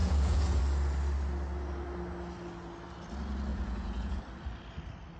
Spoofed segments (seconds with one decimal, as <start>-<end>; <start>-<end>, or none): 0.0-0.6; 3.5-4.2